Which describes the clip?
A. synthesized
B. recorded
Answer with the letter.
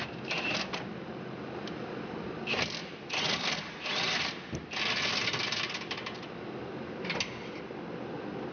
B